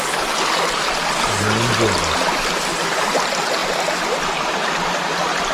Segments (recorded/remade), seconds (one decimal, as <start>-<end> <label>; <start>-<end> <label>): 0.0-5.5 recorded

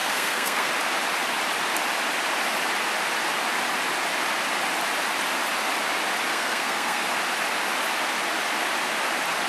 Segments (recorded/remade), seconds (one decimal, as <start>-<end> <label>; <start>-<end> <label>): 0.0-0.7 remade; 0.7-6.3 recorded; 6.3-7.0 remade; 7.0-9.5 recorded